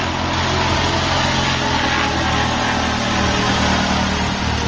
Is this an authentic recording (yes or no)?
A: yes